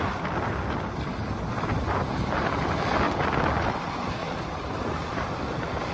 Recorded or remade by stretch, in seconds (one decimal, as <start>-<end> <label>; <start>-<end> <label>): 0.0-5.9 recorded